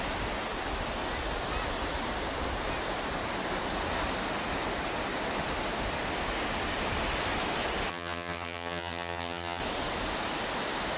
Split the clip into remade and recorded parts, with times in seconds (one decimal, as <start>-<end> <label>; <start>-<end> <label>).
0.0-7.9 recorded; 7.9-9.6 remade; 9.6-11.0 recorded